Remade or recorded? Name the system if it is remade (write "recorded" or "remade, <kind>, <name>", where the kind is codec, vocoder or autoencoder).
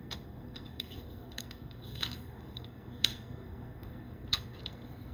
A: remade, codec, SNAC